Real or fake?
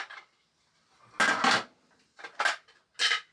real